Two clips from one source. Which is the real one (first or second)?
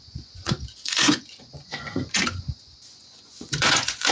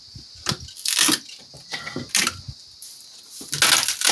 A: second